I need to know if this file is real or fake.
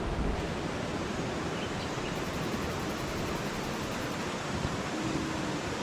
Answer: real